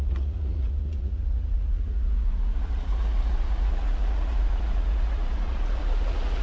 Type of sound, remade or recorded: remade